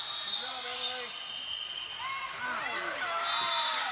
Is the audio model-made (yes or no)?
no